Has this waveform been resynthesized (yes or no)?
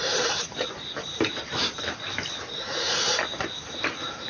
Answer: yes